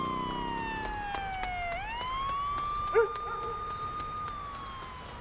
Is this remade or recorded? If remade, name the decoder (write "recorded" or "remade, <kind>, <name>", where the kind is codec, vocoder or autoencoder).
recorded